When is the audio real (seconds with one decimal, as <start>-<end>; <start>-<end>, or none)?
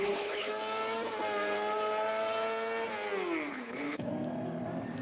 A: 0.5-3.5; 4.1-5.0